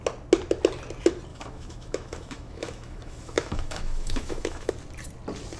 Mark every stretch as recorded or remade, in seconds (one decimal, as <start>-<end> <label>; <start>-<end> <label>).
0.0-1.3 recorded; 1.3-4.7 remade; 4.7-5.6 recorded